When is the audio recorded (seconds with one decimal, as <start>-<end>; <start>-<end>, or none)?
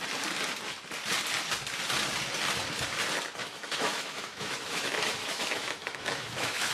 0.0-3.4